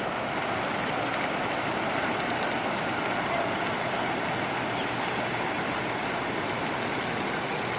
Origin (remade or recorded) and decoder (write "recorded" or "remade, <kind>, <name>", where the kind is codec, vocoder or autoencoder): recorded